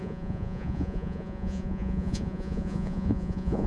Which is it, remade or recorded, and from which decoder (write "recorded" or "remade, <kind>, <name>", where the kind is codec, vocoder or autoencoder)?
remade, vocoder, Vocos